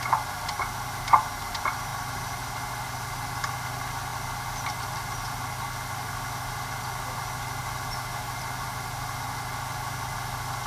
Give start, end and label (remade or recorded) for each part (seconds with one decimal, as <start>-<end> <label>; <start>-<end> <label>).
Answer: 0.0-10.7 recorded